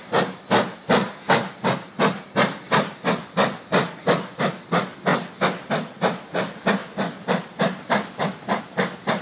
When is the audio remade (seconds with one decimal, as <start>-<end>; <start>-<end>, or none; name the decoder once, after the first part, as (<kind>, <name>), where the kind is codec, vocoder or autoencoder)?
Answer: none